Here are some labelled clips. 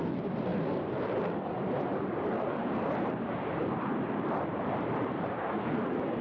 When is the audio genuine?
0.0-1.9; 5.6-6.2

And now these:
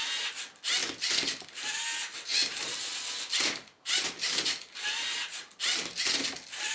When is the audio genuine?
0.0-6.7